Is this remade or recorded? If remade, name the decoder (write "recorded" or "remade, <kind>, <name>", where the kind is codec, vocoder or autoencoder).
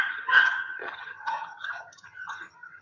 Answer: remade, vocoder, HiFi-GAN